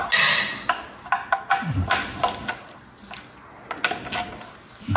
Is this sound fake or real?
real